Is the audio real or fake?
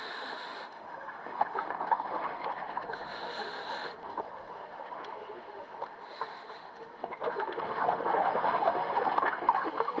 fake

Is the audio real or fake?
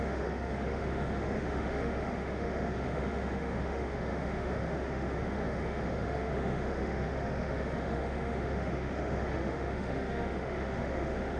fake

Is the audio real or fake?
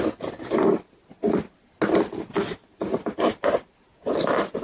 real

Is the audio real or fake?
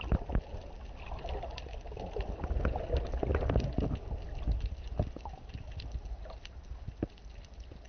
real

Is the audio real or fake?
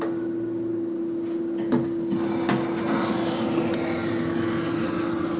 real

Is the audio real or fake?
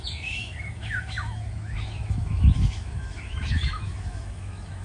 fake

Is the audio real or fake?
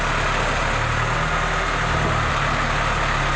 real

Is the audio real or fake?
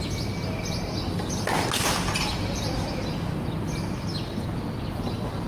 real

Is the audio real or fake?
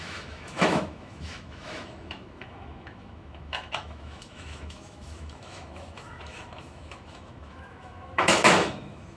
fake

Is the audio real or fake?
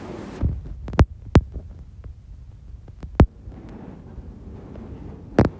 real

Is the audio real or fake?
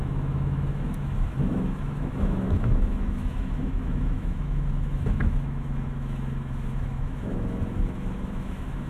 fake